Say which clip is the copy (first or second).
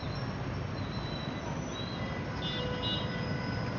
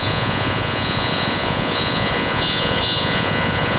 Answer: second